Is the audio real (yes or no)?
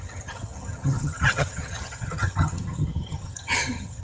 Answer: no